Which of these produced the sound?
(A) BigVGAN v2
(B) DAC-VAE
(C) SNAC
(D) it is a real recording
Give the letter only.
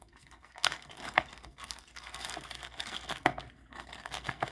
C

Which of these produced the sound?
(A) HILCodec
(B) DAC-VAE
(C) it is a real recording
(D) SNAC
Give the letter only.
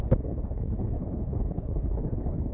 A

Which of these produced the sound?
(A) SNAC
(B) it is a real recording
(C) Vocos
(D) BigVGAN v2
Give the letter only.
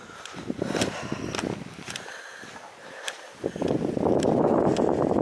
B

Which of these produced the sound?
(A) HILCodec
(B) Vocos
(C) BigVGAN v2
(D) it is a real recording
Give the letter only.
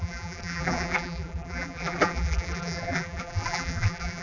C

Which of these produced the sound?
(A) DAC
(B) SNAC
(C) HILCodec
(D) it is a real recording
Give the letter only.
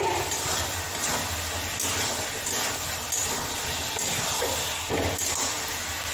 D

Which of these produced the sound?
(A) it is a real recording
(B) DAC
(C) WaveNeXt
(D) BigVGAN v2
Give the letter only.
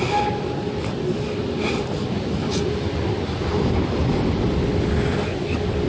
A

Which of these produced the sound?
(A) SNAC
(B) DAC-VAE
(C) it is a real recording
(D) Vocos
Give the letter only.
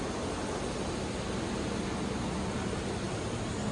C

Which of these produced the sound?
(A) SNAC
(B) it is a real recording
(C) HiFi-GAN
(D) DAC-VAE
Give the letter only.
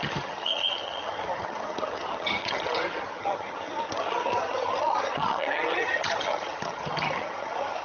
C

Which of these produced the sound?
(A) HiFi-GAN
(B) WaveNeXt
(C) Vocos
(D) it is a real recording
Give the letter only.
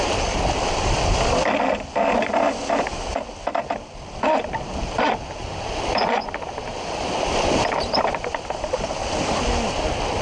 D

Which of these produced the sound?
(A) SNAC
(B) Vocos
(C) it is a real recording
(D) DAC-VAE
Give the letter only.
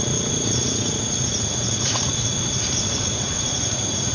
B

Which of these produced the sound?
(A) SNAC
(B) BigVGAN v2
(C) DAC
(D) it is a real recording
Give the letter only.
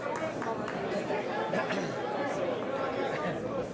D